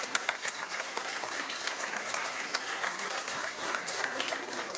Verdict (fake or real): fake